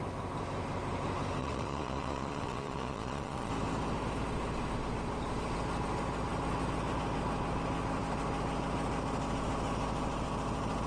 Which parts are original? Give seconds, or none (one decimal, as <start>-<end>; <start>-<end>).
0.0-1.4; 3.5-10.9